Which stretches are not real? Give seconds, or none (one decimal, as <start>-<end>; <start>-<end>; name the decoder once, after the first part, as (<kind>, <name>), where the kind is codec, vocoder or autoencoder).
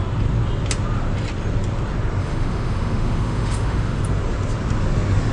2.2-4.0 (autoencoder, DAC-VAE)